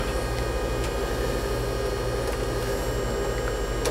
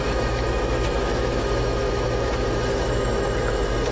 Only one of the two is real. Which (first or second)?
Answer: first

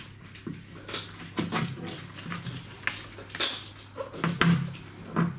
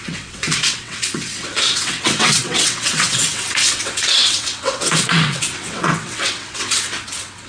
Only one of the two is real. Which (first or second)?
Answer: first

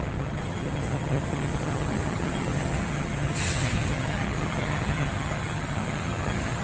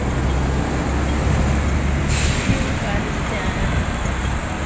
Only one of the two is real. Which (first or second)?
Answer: second